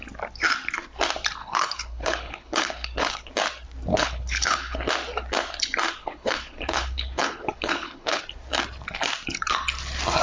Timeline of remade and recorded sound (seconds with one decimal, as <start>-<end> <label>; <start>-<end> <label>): 0.0-1.4 recorded; 1.4-3.3 remade; 3.3-3.9 recorded; 3.9-4.9 remade; 4.9-6.0 recorded; 6.0-8.2 remade; 8.2-10.2 recorded